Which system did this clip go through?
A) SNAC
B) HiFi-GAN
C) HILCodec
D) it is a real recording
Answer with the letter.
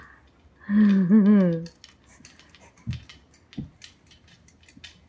D